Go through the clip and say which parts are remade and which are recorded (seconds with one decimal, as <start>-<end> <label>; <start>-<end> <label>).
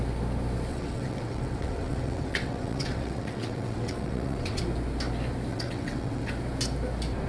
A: 0.0-0.7 recorded; 0.7-4.6 remade; 4.6-5.5 recorded; 5.5-6.3 remade; 6.3-7.3 recorded